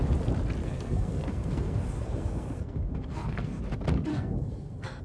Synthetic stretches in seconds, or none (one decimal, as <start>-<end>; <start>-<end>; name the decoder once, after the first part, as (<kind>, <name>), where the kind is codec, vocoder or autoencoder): 0.6-3.6 (codec, SNAC); 4.1-5.0